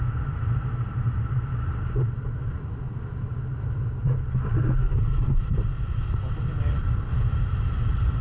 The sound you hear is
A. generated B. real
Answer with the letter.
B